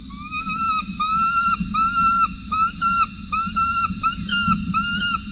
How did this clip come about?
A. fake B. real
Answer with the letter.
B